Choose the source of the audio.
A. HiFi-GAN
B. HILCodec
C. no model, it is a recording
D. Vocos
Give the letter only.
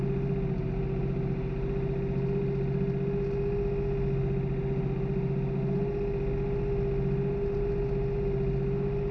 C